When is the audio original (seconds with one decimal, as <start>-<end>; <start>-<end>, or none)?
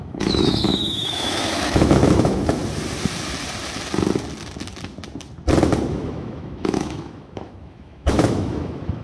2.6-5.9